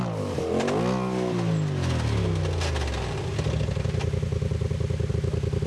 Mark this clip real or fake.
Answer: real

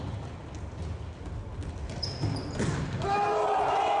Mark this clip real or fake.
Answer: real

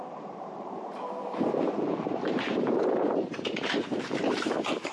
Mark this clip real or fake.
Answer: fake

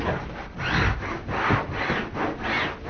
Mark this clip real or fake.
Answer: real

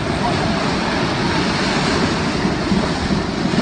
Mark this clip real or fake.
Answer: real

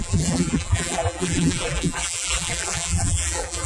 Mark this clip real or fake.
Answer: fake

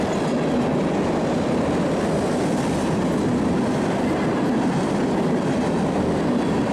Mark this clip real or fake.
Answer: real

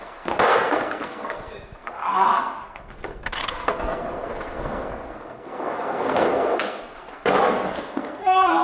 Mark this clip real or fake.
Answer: fake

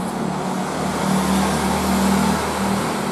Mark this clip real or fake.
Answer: real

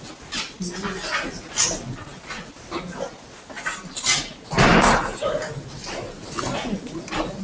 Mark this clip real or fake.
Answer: real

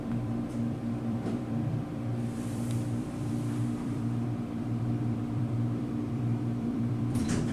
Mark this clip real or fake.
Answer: fake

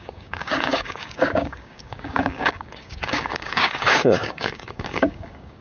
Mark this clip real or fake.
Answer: fake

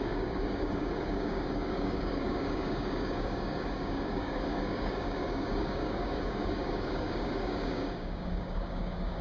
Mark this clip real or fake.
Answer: fake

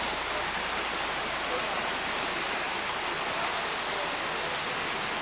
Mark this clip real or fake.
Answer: real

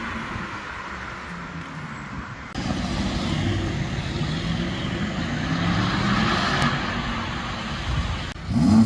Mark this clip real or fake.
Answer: real